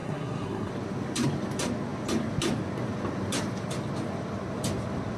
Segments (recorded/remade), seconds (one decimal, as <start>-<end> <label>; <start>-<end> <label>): 0.0-0.7 remade; 0.7-5.2 recorded